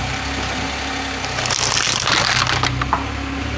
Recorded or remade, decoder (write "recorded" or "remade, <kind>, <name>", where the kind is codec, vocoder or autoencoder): recorded